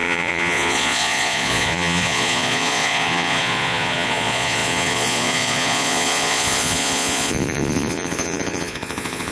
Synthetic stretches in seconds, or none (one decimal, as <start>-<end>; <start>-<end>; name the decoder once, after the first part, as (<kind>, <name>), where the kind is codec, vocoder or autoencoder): 0.0-9.3 (vocoder, Vocos)